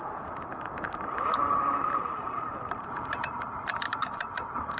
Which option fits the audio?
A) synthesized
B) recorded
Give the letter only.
A